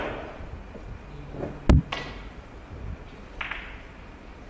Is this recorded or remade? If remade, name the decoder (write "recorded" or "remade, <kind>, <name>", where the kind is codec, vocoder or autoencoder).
recorded